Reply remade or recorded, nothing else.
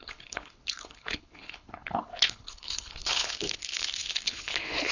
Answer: remade